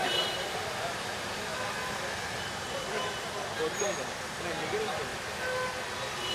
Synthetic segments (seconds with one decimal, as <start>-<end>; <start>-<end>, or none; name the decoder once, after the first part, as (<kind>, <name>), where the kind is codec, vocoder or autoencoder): 0.0-1.5 (vocoder, BigVGAN v2); 3.7-5.1